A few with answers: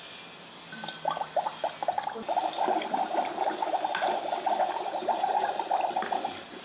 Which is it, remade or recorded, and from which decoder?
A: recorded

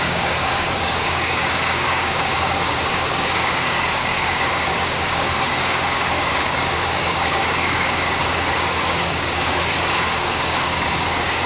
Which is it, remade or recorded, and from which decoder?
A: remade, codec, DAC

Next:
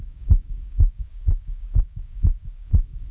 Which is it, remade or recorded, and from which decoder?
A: remade, codec, DAC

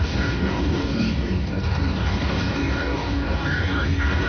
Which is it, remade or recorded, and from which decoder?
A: remade, codec, DAC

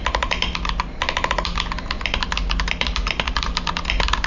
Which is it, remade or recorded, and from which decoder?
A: recorded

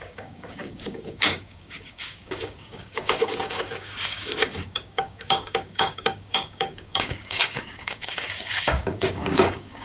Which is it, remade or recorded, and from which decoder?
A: remade, codec, DAC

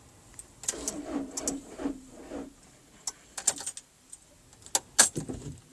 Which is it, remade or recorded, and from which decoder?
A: recorded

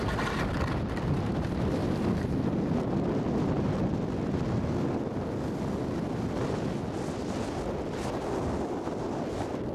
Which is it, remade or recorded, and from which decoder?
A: recorded